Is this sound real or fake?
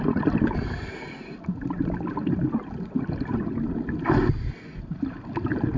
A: real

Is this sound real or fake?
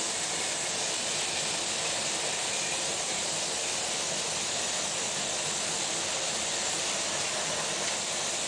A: real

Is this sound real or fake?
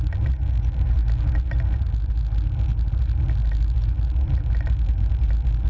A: real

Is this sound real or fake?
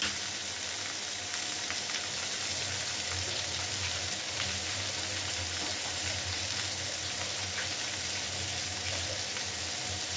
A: real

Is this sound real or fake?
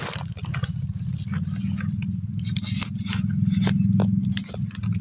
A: real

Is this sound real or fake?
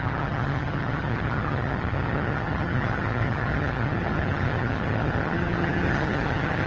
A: fake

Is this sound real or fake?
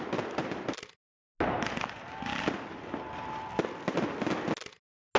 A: real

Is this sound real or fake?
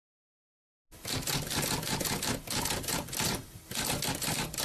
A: real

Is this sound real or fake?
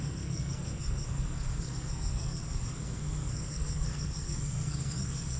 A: fake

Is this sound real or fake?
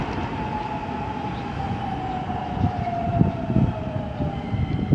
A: real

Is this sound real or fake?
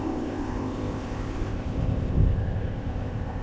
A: fake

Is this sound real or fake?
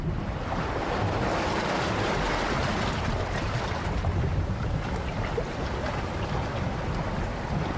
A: real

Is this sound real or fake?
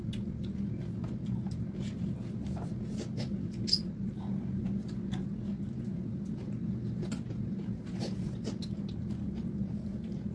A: real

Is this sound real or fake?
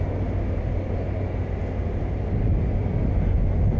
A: real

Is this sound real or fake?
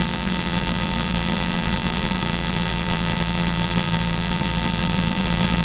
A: fake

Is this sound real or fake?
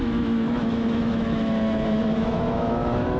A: fake